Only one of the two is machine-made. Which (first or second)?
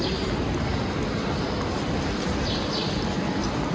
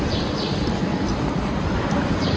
second